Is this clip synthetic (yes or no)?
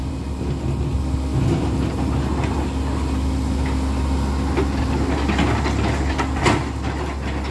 no